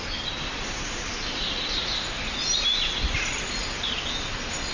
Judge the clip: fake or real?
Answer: real